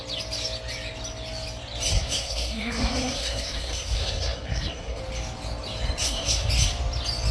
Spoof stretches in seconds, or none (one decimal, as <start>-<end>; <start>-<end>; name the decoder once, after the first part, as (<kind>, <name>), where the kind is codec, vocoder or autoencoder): 1.9-5.0 (codec, SNAC); 6.0-6.5